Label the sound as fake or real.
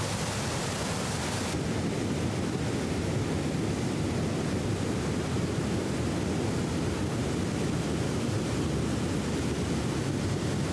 real